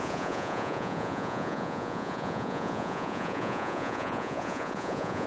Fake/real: fake